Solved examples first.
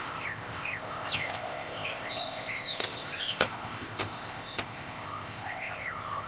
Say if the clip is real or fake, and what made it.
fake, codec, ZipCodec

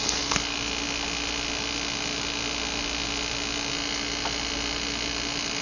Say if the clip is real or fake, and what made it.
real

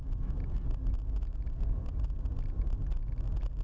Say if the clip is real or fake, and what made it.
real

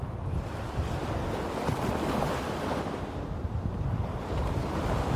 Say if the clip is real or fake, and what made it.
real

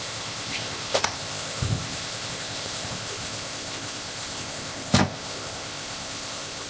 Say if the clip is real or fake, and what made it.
fake, codec, ZipCodec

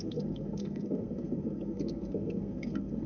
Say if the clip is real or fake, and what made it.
fake, codec, SNAC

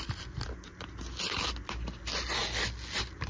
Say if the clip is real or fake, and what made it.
real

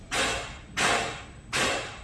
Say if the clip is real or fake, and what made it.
real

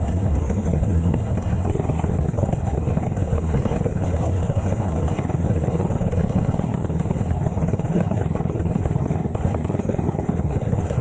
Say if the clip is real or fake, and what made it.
fake, codec, SNAC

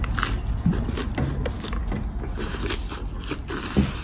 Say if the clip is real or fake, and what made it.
real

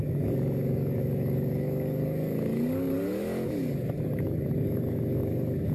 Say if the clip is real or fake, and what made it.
fake, codec, DAC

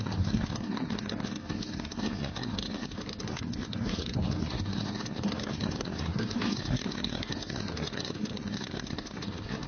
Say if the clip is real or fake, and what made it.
fake, codec, SNAC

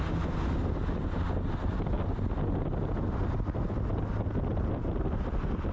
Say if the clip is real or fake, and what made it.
real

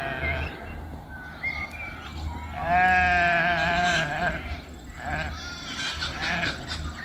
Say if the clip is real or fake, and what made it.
real